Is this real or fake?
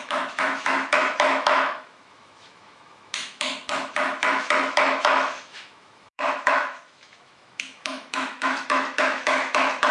fake